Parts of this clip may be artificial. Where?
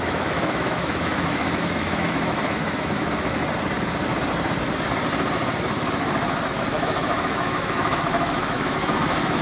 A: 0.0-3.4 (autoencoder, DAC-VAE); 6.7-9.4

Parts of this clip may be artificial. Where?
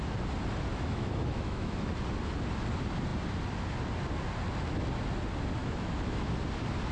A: 0.7-1.9 (autoencoder, DAC-VAE); 5.6-6.3